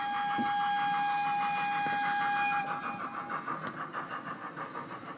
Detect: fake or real real